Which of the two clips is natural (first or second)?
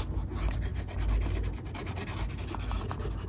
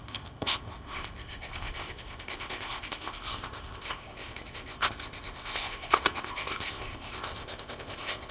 first